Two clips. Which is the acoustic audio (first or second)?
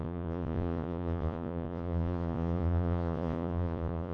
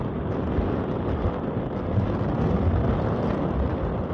second